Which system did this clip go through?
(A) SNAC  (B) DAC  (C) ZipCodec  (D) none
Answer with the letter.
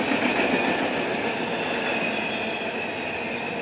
D